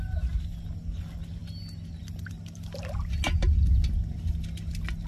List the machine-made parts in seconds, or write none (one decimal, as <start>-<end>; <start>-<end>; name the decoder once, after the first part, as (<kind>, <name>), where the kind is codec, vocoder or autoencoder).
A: none